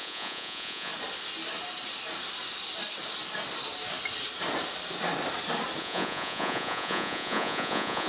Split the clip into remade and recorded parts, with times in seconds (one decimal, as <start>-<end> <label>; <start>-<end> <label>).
0.0-0.9 remade; 0.9-5.8 recorded; 5.8-8.1 remade